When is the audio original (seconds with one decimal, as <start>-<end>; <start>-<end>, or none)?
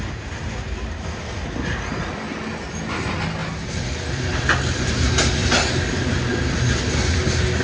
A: 0.0-3.4; 4.9-5.4; 6.4-7.6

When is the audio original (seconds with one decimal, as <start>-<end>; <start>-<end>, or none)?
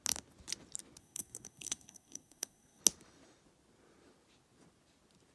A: 0.0-1.0; 2.8-5.3